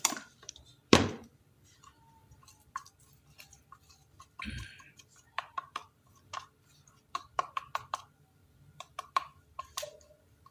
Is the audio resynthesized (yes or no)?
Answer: yes